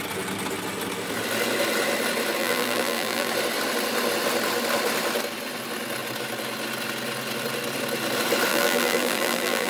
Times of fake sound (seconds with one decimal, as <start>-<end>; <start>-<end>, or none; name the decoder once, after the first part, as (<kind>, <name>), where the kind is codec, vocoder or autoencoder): 2.4-3.3 (vocoder, BigVGAN v2); 8.5-9.7